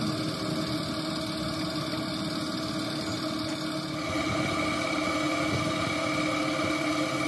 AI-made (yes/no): no